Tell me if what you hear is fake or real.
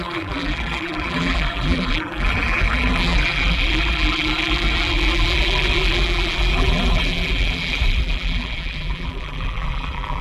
fake